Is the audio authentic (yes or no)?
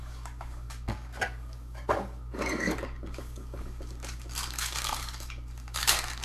no